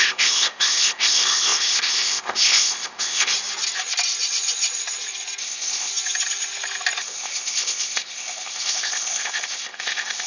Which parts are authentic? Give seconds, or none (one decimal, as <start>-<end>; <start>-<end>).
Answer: 3.3-5.4; 5.9-7.0